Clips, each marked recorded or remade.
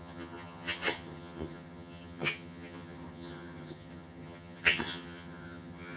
remade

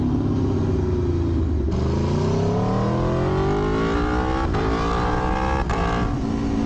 recorded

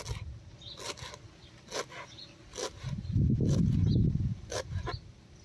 recorded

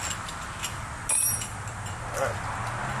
recorded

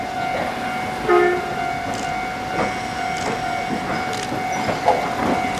recorded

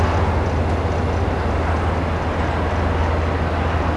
recorded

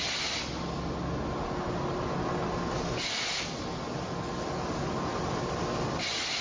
recorded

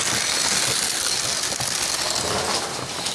recorded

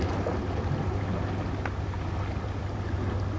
recorded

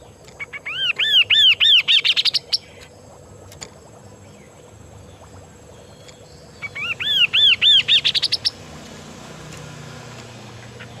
recorded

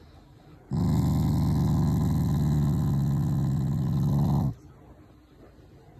recorded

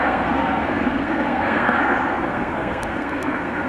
remade